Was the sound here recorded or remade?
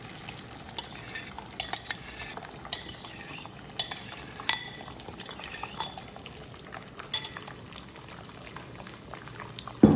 recorded